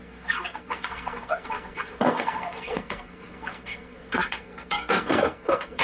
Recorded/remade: remade